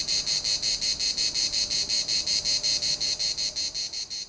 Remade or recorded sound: recorded